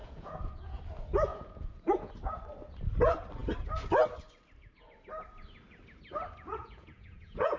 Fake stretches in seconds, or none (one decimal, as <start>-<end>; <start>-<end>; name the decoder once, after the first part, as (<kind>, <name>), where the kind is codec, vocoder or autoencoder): 0.0-0.8 (vocoder, Vocos); 1.3-2.1; 6.5-7.6